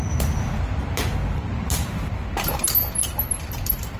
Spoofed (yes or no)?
no